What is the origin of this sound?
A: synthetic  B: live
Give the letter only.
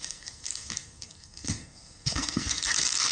A